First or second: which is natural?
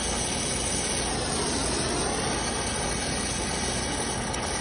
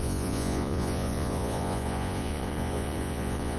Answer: first